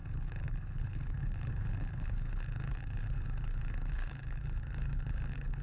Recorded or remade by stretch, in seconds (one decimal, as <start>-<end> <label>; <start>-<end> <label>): 0.0-5.6 remade